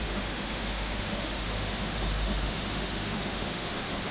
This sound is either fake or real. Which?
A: fake